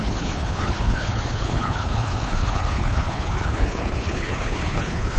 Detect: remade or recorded remade